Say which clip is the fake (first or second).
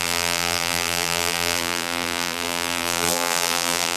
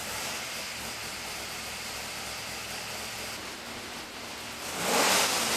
first